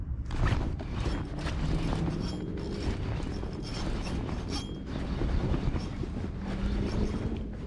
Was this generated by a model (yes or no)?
no